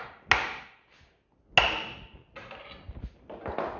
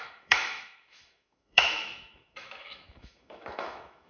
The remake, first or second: second